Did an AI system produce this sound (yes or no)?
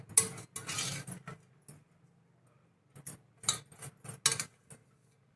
no